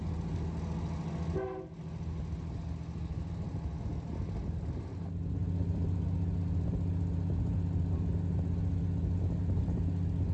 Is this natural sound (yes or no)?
yes